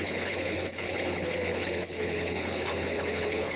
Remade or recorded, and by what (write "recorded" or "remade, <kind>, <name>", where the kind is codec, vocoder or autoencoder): remade, codec, HILCodec